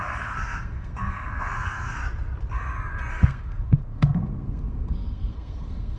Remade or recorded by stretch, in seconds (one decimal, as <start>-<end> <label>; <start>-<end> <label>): 0.0-2.0 remade; 2.0-3.1 recorded; 3.1-6.0 remade